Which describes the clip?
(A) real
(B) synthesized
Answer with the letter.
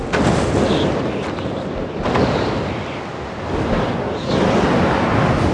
A